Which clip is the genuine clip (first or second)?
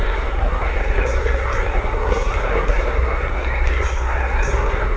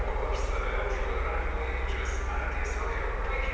second